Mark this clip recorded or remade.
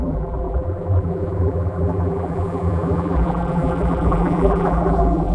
remade